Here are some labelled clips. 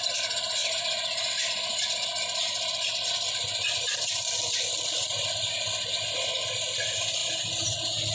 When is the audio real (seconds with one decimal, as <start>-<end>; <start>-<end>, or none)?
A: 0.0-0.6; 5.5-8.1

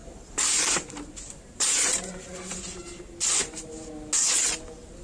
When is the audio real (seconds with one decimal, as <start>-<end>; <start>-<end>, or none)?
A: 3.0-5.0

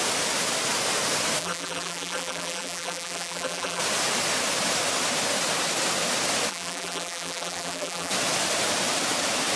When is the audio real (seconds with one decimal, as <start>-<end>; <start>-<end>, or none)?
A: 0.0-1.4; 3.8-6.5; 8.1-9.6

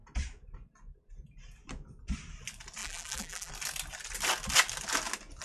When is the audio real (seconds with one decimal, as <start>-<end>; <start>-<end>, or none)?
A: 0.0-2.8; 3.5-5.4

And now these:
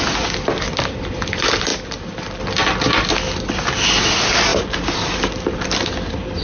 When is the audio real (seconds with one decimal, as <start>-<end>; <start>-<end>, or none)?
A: 0.0-4.5; 5.9-6.4

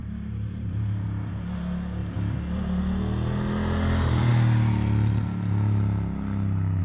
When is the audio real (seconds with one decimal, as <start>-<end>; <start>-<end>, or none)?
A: 1.4-6.8